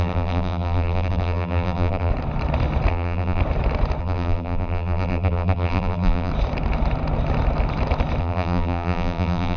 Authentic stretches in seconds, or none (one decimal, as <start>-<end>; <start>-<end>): 2.1-2.9; 3.4-4.0; 6.3-8.2